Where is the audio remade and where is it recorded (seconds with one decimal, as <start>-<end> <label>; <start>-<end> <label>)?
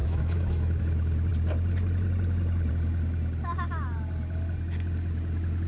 0.0-0.8 remade; 0.8-5.7 recorded